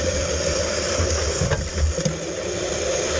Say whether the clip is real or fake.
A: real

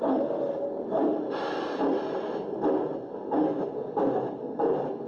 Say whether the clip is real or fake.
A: real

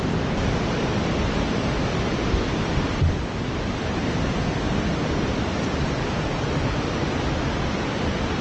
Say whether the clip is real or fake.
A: real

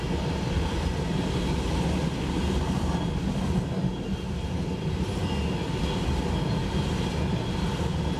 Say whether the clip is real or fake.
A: real